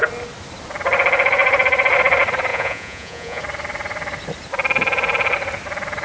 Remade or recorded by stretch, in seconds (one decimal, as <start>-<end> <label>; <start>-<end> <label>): 0.0-2.5 recorded; 2.5-3.4 remade; 3.4-6.0 recorded